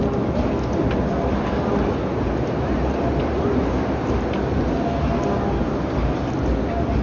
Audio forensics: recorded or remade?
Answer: recorded